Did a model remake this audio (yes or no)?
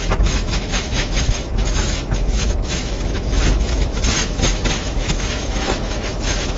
yes